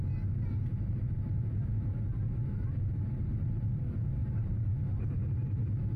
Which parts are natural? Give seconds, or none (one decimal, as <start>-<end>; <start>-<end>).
0.0-0.7; 3.8-4.2; 5.6-6.0